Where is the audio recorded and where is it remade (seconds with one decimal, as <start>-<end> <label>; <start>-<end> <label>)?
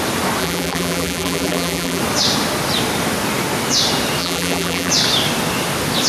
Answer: 0.0-0.4 recorded; 0.4-2.0 remade; 2.0-4.2 recorded; 4.2-4.9 remade; 4.9-6.1 recorded